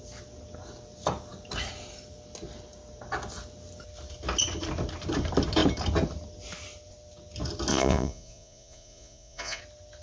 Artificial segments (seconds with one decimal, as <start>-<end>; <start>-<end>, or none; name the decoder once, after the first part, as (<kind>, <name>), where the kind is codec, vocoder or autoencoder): 7.7-9.6 (vocoder, Vocos)